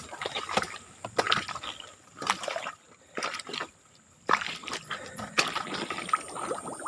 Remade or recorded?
remade